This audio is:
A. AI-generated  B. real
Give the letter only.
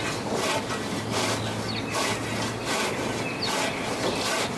B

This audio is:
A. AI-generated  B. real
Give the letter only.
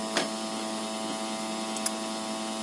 B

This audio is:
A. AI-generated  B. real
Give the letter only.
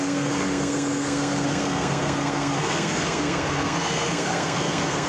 A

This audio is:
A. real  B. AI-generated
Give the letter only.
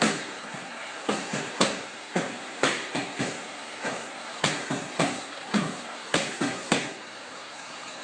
B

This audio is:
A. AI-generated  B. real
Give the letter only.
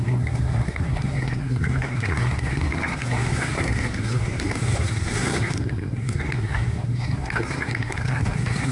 A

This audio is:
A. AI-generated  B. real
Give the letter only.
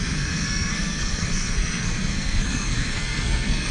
A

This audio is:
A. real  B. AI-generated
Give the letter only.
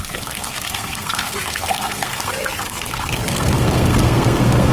B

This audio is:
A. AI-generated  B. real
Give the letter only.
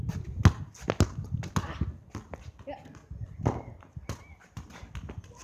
B